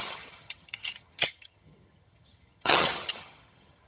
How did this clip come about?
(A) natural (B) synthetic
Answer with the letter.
B